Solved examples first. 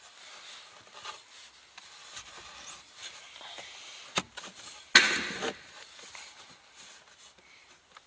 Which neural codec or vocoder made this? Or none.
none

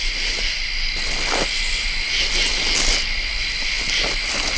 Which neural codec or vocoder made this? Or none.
none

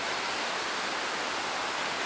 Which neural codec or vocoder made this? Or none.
none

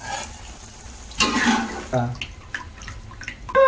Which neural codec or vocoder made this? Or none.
none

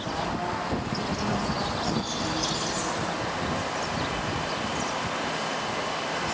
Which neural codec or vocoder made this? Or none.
none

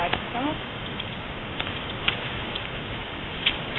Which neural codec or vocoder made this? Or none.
codec, DAC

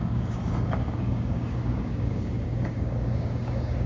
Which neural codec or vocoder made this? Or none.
codec, DAC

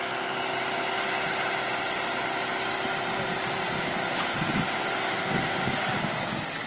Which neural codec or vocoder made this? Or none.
none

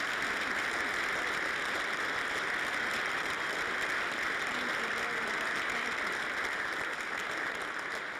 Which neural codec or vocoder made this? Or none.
none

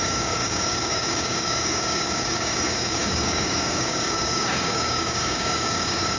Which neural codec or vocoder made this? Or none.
codec, DAC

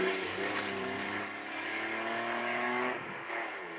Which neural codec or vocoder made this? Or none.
codec, DAC